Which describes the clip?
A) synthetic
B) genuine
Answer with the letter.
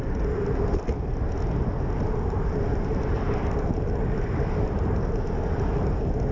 B